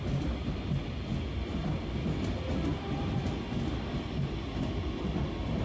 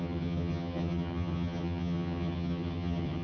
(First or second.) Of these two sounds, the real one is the first